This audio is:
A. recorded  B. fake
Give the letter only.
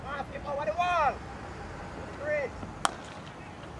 A